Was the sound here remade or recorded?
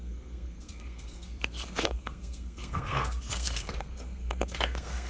remade